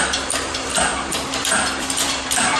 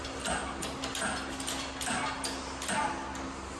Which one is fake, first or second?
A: first